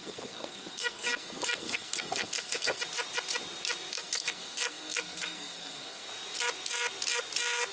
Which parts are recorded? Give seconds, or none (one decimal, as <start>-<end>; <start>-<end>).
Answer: 2.8-3.9; 6.1-7.7